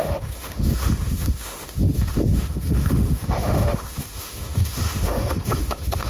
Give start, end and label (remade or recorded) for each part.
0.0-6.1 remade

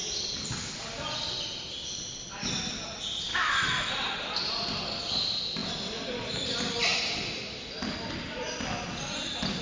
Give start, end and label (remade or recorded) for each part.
0.0-3.3 recorded; 3.3-3.9 remade; 3.9-9.6 recorded

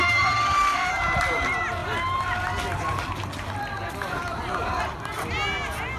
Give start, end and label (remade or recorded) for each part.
0.0-0.9 remade; 0.9-6.0 recorded

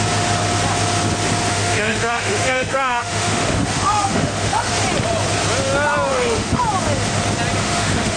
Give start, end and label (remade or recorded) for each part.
0.0-1.5 recorded; 1.5-4.7 remade; 4.7-6.1 recorded; 6.1-6.6 remade; 6.6-7.6 recorded; 7.6-8.2 remade